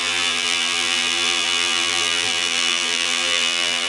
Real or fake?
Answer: fake